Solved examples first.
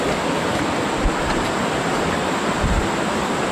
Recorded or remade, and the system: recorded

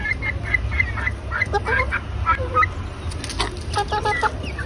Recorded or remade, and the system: recorded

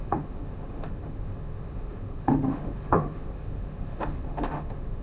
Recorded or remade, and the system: remade, autoencoder, DAC-VAE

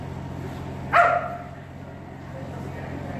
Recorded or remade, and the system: recorded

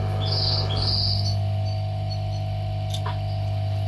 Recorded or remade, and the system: recorded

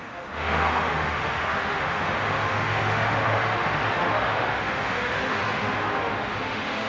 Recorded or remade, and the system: remade, autoencoder, DAC-VAE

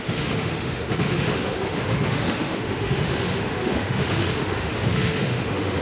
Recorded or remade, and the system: remade, autoencoder, DAC-VAE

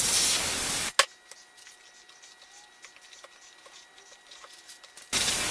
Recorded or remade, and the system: recorded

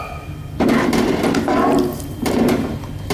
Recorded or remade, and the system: recorded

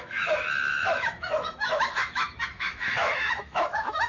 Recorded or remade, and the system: remade, autoencoder, DAC-VAE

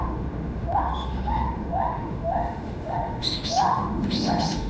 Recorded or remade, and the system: remade, autoencoder, DAC-VAE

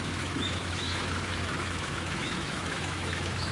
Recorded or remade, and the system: remade, autoencoder, DAC-VAE